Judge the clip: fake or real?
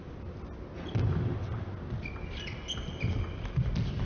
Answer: real